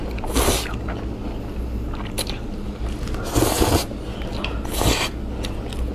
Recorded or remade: recorded